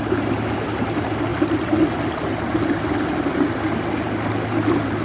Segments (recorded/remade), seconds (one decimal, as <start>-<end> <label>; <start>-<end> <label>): 0.0-5.0 recorded